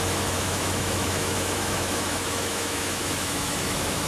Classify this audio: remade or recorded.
remade